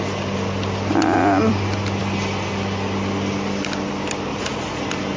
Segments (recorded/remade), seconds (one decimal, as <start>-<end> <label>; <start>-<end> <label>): 0.0-4.3 recorded; 4.3-4.8 remade; 4.8-5.2 recorded